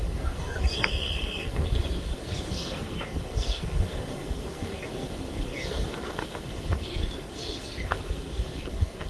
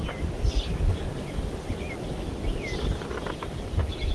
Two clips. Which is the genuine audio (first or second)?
second